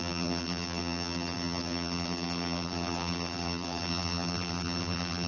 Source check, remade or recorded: remade